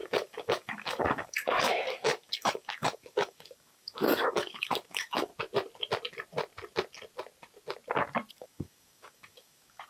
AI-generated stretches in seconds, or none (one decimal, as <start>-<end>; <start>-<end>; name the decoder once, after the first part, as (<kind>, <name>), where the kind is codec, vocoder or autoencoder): 0.0-5.3 (codec, DAC); 8.3-9.9